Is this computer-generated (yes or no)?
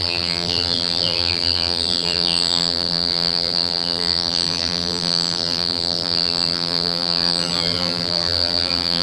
yes